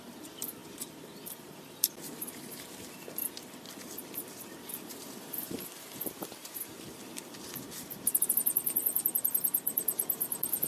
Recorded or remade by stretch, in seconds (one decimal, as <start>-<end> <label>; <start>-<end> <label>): 0.0-3.2 remade; 3.2-3.7 recorded; 3.7-10.7 remade